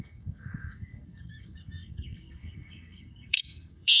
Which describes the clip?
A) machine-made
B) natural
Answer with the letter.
A